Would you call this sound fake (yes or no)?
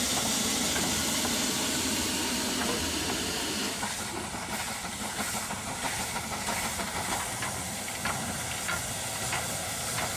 no